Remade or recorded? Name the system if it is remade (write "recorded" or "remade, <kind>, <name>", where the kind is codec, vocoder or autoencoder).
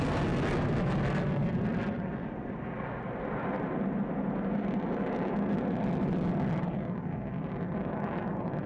recorded